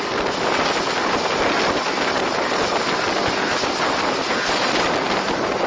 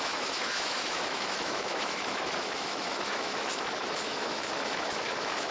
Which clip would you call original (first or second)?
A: first